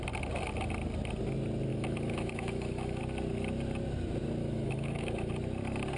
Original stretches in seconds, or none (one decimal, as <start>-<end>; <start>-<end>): 0.0-1.7; 3.0-4.4; 5.3-6.0